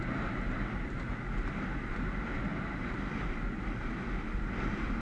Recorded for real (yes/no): yes